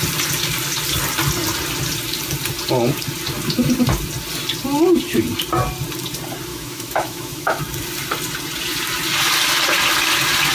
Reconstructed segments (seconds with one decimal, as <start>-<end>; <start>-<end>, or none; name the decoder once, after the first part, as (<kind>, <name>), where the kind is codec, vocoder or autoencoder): 6.5-7.6 (autoencoder, DAC-VAE)